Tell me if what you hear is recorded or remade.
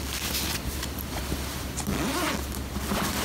recorded